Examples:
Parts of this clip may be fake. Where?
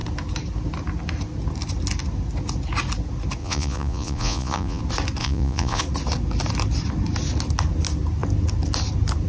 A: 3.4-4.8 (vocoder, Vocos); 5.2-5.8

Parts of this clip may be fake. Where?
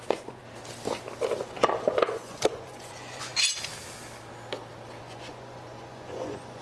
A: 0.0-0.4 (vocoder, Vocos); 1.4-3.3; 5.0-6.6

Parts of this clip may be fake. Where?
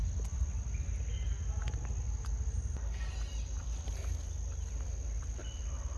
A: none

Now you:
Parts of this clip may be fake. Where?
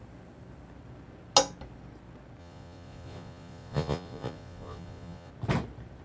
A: 2.4-5.3 (vocoder, Vocos)